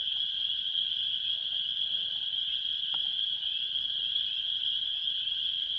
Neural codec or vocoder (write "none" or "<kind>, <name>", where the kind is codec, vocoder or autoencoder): none